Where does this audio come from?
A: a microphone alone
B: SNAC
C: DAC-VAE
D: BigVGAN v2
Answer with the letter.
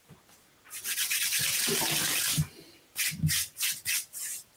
A